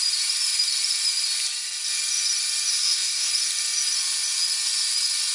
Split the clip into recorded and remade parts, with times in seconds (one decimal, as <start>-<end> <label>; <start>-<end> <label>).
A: 0.0-2.7 recorded; 2.7-3.3 remade; 3.3-5.3 recorded